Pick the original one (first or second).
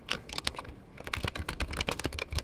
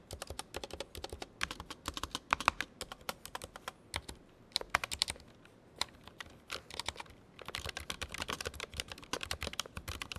second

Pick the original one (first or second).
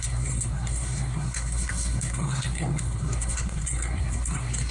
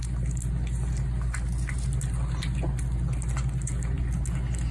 second